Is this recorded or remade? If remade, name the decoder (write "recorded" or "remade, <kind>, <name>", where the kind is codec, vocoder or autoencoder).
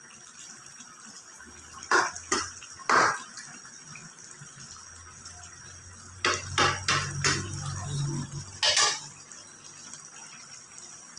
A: recorded